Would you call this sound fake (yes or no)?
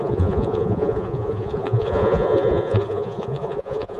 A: yes